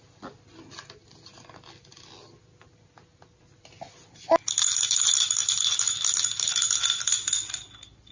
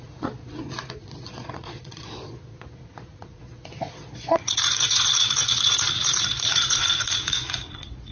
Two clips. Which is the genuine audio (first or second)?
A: first